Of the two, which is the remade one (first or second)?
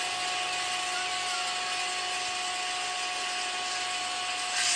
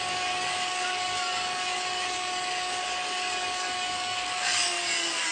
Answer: second